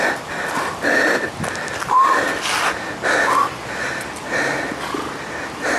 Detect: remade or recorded recorded